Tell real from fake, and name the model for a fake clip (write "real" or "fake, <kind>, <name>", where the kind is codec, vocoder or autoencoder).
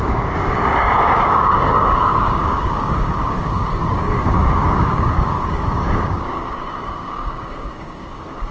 fake, codec, DAC